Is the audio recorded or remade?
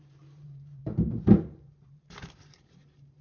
remade